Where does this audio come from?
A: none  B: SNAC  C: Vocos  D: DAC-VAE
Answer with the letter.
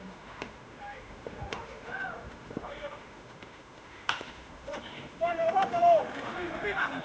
D